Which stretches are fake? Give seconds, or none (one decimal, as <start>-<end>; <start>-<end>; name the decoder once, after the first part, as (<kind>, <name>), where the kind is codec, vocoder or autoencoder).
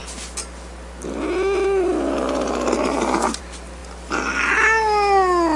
none